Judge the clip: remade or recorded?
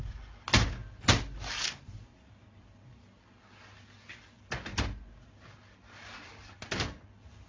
recorded